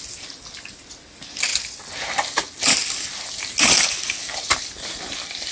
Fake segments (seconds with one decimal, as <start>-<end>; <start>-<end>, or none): none